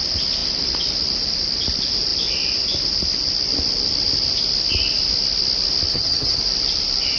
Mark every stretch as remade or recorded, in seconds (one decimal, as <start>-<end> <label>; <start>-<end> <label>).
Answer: 0.0-5.9 recorded; 5.9-6.4 remade; 6.4-7.2 recorded